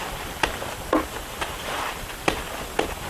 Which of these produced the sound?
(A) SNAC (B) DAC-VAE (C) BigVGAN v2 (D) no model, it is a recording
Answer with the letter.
C